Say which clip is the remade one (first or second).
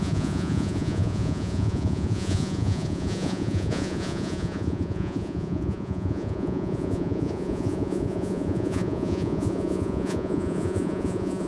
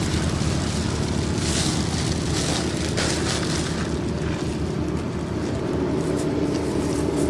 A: first